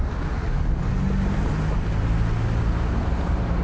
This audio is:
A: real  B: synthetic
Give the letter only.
A